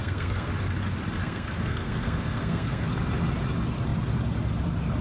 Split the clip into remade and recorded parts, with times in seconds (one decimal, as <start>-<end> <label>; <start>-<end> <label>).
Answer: 0.0-0.5 remade; 0.5-1.2 recorded; 1.2-2.9 remade; 2.9-5.0 recorded